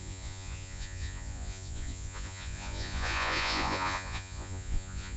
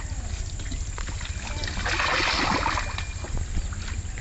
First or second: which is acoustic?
second